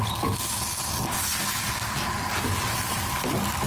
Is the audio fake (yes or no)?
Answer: no